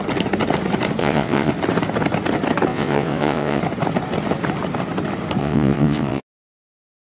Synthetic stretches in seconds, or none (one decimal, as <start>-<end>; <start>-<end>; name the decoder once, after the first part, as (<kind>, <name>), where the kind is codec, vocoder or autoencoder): 1.0-1.5 (vocoder, WaveNeXt); 2.7-3.6; 5.4-6.2